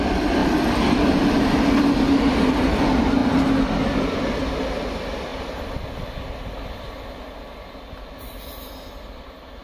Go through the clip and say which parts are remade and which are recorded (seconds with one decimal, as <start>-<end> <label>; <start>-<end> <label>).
0.0-0.4 recorded; 0.4-1.6 remade; 1.6-3.2 recorded; 3.2-3.8 remade; 3.8-9.6 recorded